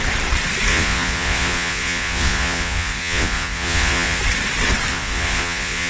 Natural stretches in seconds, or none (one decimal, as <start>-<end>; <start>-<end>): 0.0-0.7; 4.2-4.9